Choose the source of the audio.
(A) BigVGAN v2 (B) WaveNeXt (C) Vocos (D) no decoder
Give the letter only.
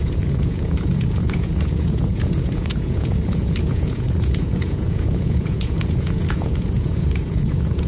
C